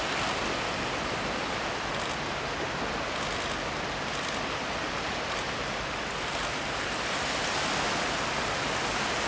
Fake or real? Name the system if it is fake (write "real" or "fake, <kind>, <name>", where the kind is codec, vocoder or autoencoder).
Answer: real